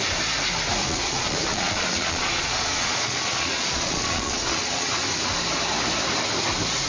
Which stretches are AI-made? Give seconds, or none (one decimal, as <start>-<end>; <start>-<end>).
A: 0.8-4.9